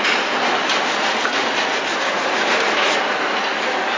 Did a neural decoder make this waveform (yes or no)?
no